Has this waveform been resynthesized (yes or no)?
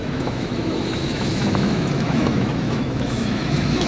yes